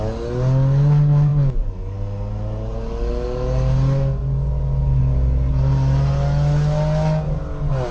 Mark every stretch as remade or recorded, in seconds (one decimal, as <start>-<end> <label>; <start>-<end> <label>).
0.0-7.9 recorded